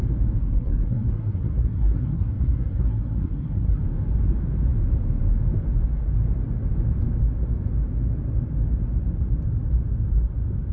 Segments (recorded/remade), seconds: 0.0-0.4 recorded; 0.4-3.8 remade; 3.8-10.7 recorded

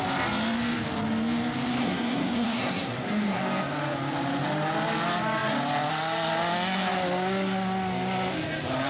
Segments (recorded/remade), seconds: 0.0-1.8 recorded; 1.8-3.4 remade; 3.4-8.9 recorded

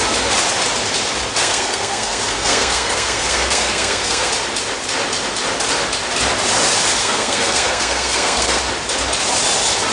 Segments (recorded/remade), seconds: 0.0-1.4 recorded; 1.4-4.3 remade; 4.3-7.0 recorded; 7.0-8.6 remade; 8.6-9.9 recorded

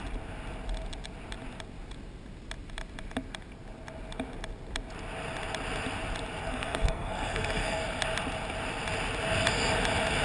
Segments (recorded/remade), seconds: 0.0-6.4 recorded; 6.4-7.8 remade; 7.8-10.2 recorded

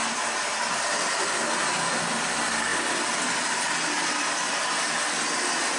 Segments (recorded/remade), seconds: 0.0-5.8 recorded

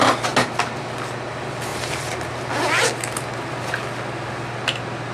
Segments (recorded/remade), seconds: 0.0-5.1 recorded

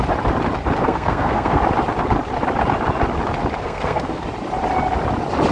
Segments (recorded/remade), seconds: 0.0-0.8 recorded; 0.8-1.6 remade; 1.6-3.6 recorded; 3.6-4.2 remade; 4.2-5.5 recorded